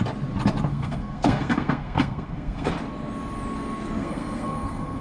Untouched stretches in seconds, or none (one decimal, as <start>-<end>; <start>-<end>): 0.0-0.7; 2.7-4.0